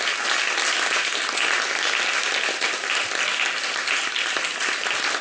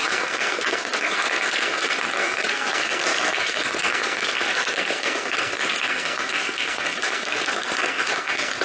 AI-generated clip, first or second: second